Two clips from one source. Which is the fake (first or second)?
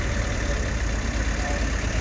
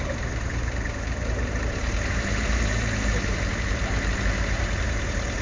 second